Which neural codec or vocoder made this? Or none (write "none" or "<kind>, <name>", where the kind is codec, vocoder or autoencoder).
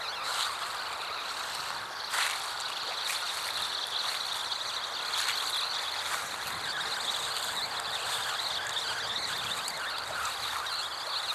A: none